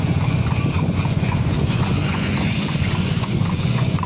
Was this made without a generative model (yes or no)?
no